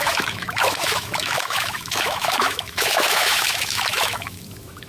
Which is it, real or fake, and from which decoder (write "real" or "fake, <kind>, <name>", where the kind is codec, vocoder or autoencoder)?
fake, autoencoder, DAC-VAE